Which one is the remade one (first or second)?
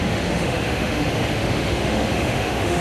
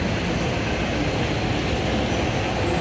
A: first